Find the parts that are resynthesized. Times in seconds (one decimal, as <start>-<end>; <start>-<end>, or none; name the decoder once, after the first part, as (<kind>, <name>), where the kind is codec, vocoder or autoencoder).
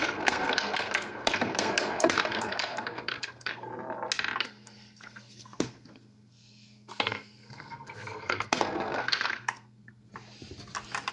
0.0-3.7 (codec, SNAC); 4.4-10.1